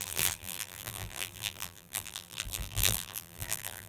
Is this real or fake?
fake